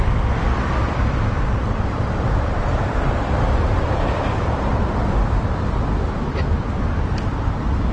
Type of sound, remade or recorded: remade